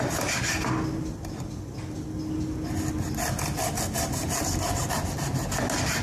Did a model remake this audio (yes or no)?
no